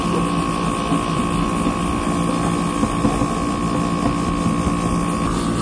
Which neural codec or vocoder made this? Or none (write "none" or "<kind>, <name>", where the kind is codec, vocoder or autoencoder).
none